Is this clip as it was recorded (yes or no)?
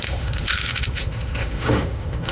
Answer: no